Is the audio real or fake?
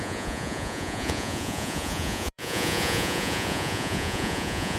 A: fake